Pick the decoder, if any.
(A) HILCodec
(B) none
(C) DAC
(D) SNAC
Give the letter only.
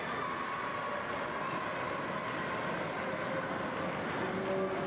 B